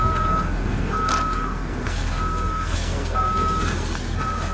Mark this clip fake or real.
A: fake